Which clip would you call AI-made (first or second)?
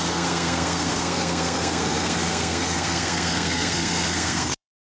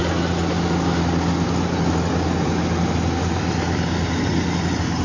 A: first